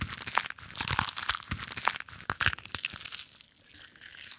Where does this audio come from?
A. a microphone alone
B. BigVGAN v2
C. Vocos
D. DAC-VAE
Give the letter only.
A